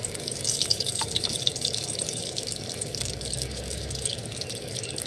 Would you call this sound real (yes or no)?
no